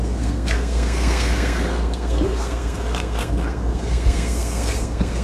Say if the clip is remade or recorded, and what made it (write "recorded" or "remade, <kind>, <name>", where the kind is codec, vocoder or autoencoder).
remade, codec, SNAC